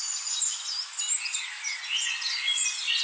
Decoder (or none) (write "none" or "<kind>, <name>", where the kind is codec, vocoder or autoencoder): none